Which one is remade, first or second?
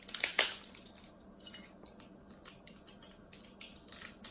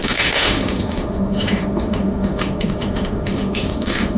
second